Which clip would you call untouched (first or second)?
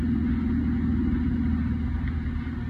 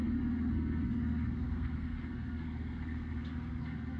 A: first